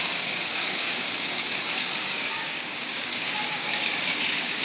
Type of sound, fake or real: fake